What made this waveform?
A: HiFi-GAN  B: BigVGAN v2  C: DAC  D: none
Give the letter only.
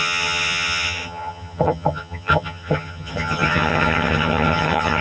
A